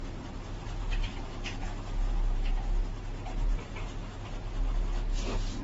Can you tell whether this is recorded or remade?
recorded